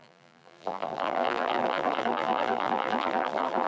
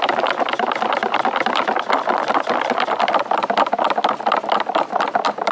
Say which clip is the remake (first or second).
first